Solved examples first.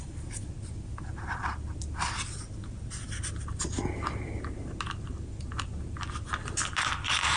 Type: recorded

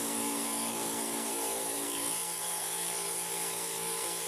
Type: remade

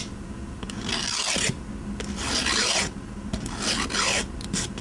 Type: recorded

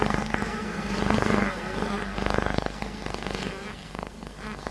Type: remade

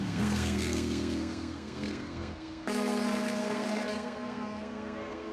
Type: remade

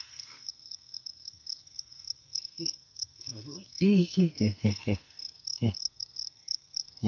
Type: remade